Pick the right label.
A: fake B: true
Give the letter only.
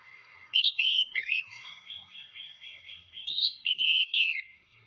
A